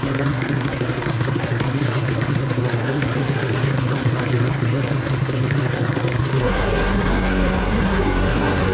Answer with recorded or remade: remade